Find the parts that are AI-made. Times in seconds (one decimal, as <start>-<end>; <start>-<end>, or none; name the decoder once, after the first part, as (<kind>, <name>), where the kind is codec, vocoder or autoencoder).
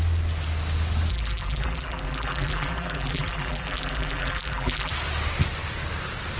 1.1-4.9 (vocoder, BigVGAN v2)